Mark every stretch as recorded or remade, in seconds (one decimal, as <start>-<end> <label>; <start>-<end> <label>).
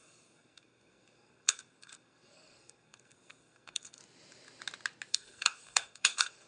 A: 0.0-4.0 remade; 4.0-5.1 recorded; 5.1-6.5 remade